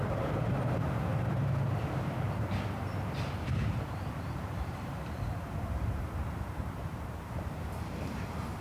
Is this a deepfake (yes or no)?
yes